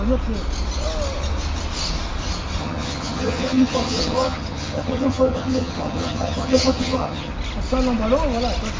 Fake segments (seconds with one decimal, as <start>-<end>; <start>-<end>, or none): 2.6-7.3